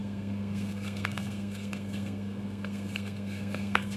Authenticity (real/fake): fake